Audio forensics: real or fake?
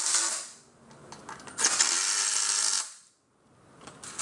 real